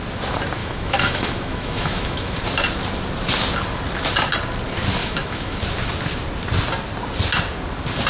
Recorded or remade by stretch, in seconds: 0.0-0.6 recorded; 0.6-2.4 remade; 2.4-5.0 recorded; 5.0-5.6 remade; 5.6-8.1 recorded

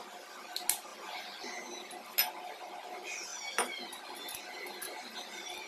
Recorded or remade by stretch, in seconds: 0.0-5.7 recorded

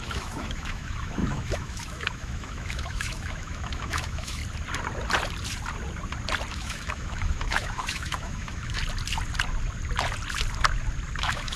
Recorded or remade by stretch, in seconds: 0.0-4.4 remade; 4.4-6.5 recorded; 6.5-8.8 remade; 8.8-11.2 recorded; 11.2-11.6 remade

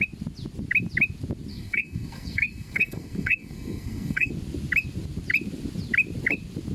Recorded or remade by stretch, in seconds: 0.0-1.5 recorded; 1.5-4.3 remade; 4.3-6.7 recorded

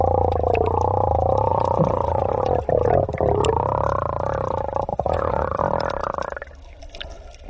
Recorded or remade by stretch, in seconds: 0.0-1.5 recorded; 1.5-2.4 remade; 2.4-4.9 recorded; 4.9-5.6 remade; 5.6-7.5 recorded

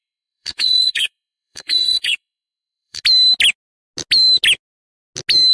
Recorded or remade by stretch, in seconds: 0.0-3.0 remade; 3.0-5.5 recorded